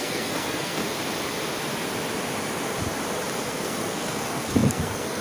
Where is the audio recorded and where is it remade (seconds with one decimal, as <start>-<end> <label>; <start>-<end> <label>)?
0.0-0.8 remade; 0.8-3.5 recorded; 3.5-5.2 remade